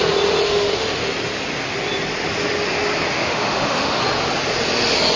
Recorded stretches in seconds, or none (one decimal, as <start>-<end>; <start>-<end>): 0.0-0.4; 1.0-3.1; 4.0-5.2